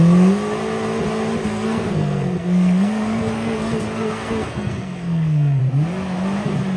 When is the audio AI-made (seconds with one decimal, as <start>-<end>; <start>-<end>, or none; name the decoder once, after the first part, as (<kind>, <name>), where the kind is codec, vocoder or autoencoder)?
1.5-5.6 (codec, SNAC)